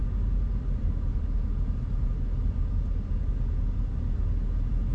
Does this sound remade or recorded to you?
recorded